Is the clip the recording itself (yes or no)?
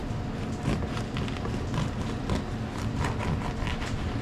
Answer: yes